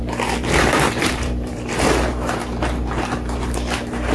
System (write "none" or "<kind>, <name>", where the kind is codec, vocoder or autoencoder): vocoder, BigVGAN v2